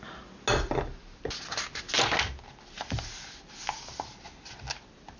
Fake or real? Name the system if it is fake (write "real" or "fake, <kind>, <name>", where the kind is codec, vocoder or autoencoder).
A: real